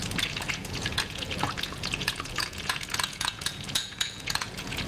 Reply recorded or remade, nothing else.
remade